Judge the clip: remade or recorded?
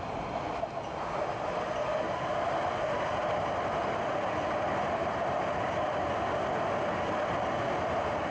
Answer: recorded